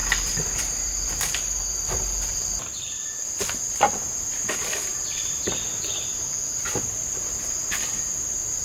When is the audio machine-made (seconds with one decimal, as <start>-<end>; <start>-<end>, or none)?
0.0-3.2

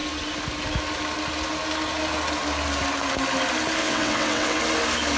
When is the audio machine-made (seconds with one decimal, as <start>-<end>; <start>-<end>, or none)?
3.8-4.6

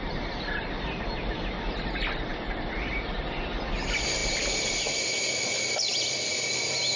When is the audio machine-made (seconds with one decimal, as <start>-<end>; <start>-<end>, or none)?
none

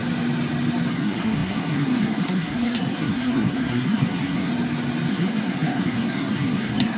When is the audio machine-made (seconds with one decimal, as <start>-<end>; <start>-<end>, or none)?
0.9-4.5; 5.1-7.0